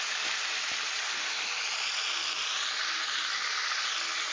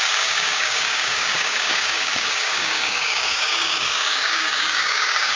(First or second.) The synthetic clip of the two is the second